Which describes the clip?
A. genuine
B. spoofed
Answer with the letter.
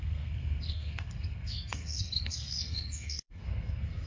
B